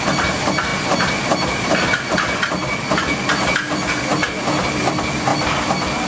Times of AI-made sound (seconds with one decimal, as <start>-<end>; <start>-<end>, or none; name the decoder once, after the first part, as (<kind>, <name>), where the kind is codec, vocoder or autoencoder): none